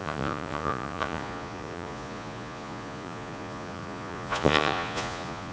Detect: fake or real fake